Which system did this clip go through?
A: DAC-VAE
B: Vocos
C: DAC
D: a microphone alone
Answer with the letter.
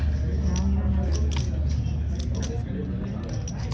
D